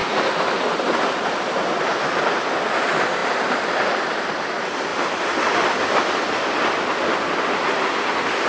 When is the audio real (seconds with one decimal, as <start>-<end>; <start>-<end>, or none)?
1.2-4.9; 5.7-8.5

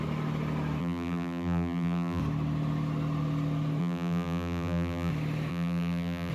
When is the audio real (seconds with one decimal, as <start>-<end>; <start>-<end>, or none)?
0.0-0.8; 2.2-3.8; 5.1-5.5